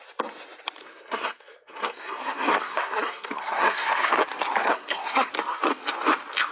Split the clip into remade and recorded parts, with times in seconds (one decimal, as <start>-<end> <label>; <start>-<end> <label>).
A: 0.0-0.8 recorded; 0.8-4.1 remade; 4.1-4.6 recorded; 4.6-5.3 remade; 5.3-6.5 recorded